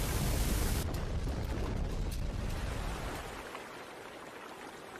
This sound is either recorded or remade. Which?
recorded